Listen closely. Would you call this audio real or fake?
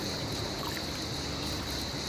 real